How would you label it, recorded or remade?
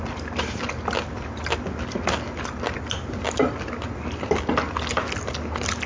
recorded